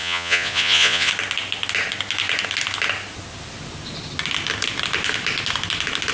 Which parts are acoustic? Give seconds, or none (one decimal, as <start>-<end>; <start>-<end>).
1.1-6.1